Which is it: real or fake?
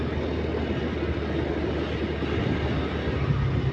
real